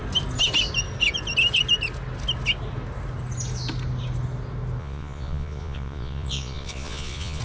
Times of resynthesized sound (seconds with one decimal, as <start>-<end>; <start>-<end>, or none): 4.8-7.4

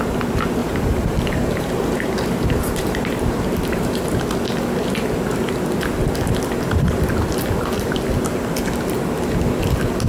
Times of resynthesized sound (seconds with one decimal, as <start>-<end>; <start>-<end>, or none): 0.6-4.0

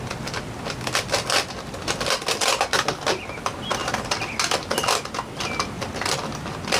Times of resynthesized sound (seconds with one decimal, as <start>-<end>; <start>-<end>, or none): none

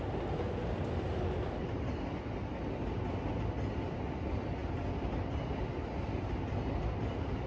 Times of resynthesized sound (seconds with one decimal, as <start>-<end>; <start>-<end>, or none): none

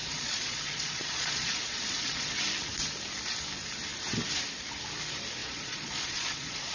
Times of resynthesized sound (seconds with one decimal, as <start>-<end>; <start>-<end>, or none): 0.0-2.4; 5.4-6.7